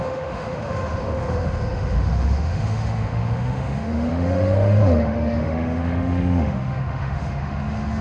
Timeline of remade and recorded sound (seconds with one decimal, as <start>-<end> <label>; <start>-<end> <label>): 0.0-8.0 remade